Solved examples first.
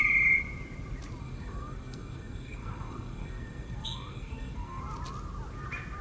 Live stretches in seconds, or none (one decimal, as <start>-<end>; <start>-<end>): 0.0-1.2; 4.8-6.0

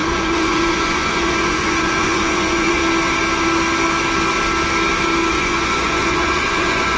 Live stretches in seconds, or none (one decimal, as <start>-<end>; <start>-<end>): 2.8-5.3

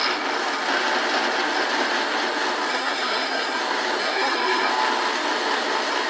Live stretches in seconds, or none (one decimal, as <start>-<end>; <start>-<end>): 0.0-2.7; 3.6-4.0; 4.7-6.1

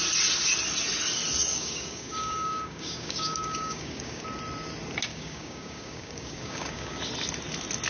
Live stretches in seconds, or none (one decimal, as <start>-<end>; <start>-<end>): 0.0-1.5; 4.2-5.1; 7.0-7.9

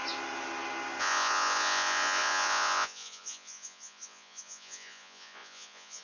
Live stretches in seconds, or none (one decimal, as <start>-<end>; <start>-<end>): 0.0-1.0

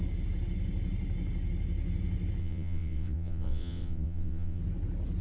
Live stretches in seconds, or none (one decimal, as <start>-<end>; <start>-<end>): 0.0-2.4; 4.6-5.2